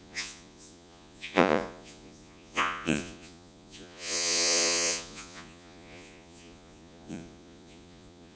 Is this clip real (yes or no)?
no